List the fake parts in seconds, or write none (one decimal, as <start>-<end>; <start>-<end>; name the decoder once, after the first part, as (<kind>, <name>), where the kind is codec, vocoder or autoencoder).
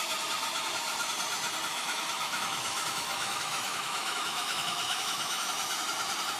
1.7-5.5 (autoencoder, DAC-VAE)